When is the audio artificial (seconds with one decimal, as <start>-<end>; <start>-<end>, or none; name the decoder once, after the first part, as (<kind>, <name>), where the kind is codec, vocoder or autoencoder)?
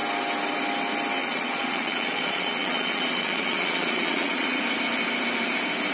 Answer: 1.2-4.6 (vocoder, Vocos)